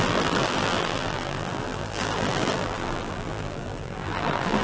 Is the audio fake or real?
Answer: fake